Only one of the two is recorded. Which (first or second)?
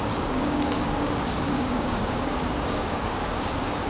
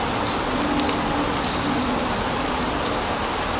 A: second